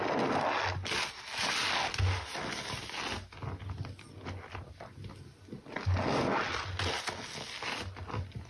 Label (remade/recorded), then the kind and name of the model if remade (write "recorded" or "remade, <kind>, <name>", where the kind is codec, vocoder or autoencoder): recorded